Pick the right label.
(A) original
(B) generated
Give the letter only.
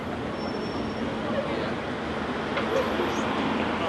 A